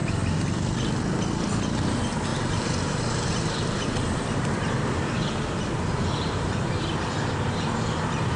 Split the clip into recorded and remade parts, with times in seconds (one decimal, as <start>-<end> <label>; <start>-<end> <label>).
0.0-2.3 recorded; 2.3-6.8 remade; 6.8-8.4 recorded